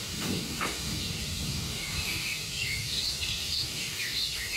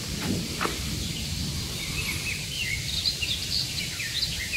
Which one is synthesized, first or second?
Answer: first